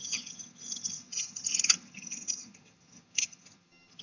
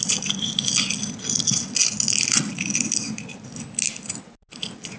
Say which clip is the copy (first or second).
first